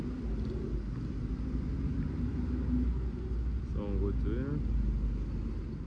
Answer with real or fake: real